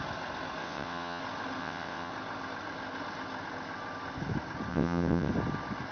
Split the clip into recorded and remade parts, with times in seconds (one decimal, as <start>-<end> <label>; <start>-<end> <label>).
0.0-0.6 recorded; 0.6-1.2 remade; 1.2-1.6 recorded; 1.6-2.1 remade; 2.1-4.7 recorded; 4.7-5.3 remade; 5.3-5.9 recorded